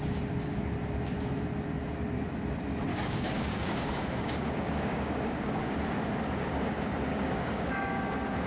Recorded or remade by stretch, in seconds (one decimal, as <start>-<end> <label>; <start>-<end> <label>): 0.0-2.9 recorded; 2.9-5.7 remade; 5.7-7.1 recorded; 7.1-8.0 remade; 8.0-8.5 recorded